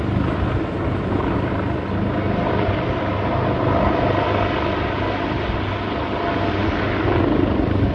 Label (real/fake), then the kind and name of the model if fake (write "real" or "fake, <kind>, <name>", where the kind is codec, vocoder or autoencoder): real